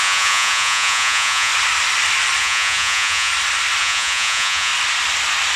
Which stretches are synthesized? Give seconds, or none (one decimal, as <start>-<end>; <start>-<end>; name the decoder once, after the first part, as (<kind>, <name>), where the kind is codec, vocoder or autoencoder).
0.0-1.5 (vocoder, Vocos); 2.4-3.3; 3.8-4.7